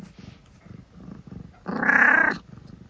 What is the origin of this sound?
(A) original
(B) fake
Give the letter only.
A